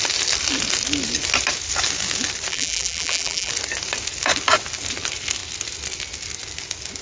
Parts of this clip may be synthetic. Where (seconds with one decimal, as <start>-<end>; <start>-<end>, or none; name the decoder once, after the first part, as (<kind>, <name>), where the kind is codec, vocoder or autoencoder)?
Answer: 2.5-3.5 (vocoder, BigVGAN v2)